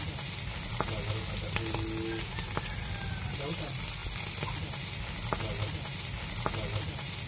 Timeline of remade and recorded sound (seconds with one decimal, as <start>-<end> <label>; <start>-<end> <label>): 0.0-7.3 recorded